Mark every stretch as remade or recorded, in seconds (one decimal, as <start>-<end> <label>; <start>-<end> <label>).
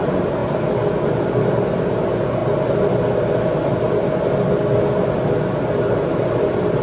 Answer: 0.0-0.4 remade; 0.4-1.1 recorded; 1.1-2.4 remade; 2.4-5.8 recorded; 5.8-6.8 remade